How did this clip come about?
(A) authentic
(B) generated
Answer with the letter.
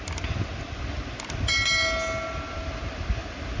A